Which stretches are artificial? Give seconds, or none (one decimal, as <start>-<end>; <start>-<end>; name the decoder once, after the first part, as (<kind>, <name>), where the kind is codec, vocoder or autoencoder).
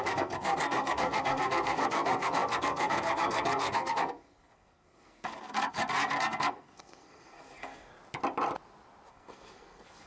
0.0-7.9 (codec, SNAC); 9.1-10.1